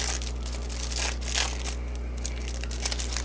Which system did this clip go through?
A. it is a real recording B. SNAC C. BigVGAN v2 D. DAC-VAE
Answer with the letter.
A